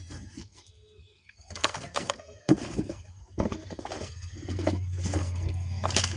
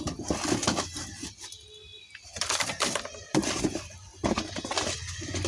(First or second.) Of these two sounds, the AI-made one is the first